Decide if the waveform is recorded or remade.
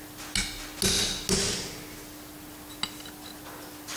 recorded